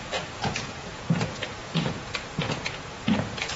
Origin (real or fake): fake